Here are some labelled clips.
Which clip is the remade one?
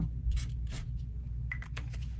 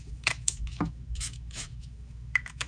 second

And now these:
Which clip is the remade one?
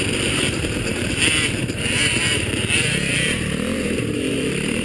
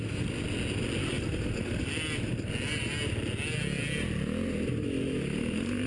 first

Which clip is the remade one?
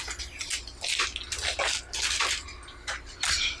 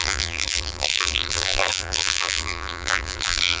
second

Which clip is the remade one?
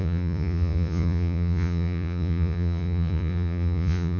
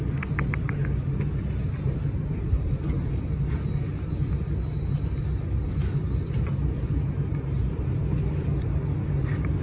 first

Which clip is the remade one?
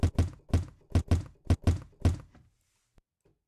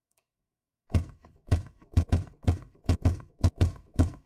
second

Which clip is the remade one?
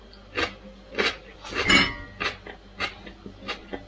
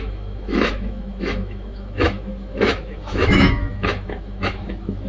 second